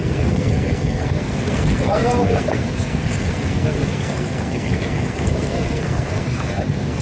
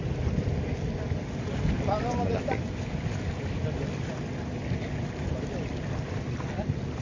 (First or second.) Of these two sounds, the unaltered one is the second